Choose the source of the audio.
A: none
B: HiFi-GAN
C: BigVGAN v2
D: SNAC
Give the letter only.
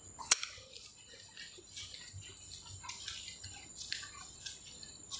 A